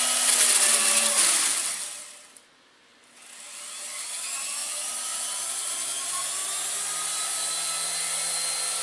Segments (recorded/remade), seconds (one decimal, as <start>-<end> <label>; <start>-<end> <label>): 0.0-4.6 recorded; 4.6-5.7 remade; 5.7-6.4 recorded; 6.4-6.9 remade; 6.9-8.8 recorded